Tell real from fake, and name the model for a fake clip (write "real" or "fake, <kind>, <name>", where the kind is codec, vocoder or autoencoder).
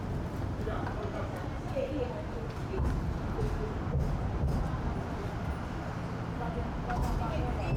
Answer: real